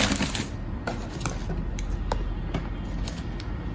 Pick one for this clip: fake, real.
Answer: real